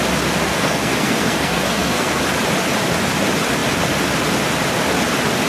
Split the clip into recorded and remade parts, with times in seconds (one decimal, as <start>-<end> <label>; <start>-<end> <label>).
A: 0.0-0.4 recorded; 0.4-2.2 remade; 2.2-5.5 recorded